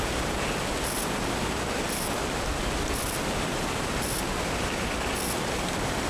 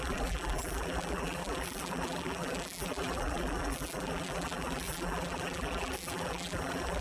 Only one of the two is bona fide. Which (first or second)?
first